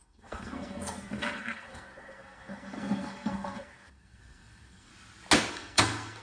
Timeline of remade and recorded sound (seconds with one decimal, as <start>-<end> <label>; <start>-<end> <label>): 0.0-4.9 remade; 4.9-5.5 recorded; 5.5-6.2 remade